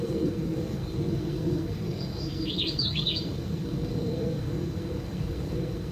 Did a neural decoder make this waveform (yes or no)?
yes